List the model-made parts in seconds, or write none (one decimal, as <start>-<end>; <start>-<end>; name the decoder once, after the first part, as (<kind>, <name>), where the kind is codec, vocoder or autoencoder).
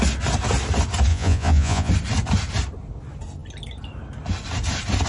1.1-1.9 (vocoder, Vocos)